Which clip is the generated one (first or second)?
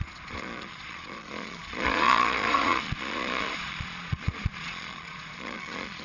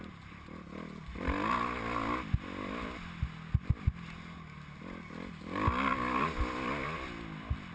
first